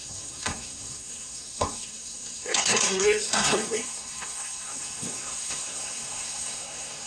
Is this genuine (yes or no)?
no